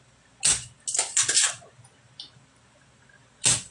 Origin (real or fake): real